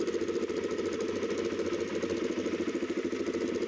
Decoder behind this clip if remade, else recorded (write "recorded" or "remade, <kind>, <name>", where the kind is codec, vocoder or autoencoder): recorded